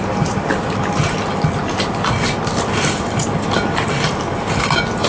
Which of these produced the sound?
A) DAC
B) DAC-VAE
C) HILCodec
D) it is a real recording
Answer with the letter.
D